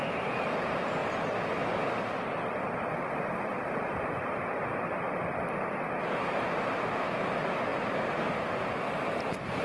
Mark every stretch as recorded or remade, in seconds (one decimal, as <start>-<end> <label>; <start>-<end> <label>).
0.0-9.6 recorded